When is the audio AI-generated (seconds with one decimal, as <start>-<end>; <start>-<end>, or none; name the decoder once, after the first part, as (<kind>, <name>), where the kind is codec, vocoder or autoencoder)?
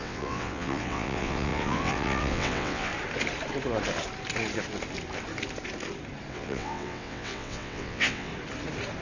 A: 0.0-2.9 (vocoder, WaveNeXt); 6.3-8.3